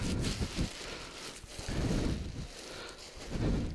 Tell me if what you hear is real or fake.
real